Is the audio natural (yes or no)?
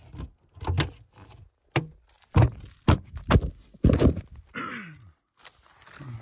yes